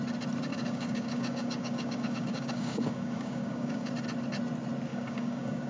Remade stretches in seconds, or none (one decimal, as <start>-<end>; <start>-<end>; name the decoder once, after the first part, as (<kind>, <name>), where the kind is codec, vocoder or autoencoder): 0.5-3.9 (codec, DAC); 4.9-5.7